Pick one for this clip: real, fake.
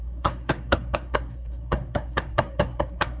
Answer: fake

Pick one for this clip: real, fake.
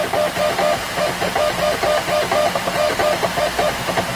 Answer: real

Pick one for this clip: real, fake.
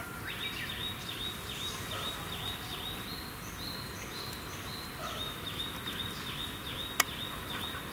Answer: real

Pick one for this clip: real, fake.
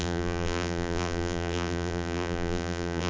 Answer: fake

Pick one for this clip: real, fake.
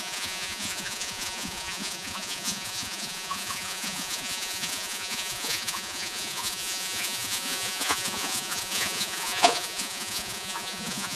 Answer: fake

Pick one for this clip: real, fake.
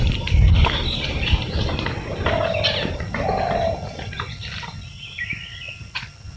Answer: real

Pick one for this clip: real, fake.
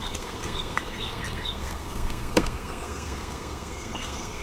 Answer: fake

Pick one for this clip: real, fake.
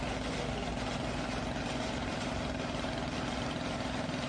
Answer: real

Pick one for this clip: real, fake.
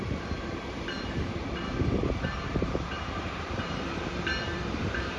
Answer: fake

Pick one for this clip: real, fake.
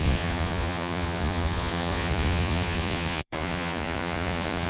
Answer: fake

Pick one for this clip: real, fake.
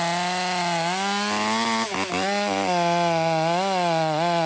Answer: real